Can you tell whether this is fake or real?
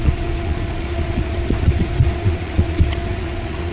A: fake